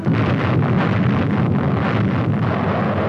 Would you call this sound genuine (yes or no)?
yes